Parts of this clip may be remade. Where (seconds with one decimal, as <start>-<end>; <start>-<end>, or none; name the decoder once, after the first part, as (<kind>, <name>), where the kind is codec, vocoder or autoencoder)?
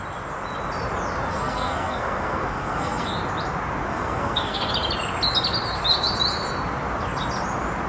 1.3-3.1 (codec, SNAC); 3.9-4.7